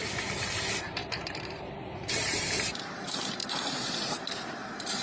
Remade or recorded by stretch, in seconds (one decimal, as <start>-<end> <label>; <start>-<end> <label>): 0.0-0.5 recorded; 0.5-5.0 remade